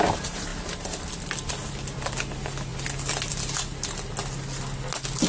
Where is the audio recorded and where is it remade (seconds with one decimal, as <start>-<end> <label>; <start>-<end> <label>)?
0.0-5.3 recorded